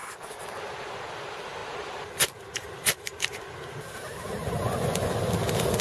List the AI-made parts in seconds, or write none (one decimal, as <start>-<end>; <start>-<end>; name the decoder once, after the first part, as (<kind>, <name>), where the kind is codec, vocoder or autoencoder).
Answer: 4.4-5.1 (vocoder, Vocos)